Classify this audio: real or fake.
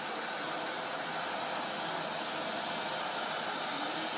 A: real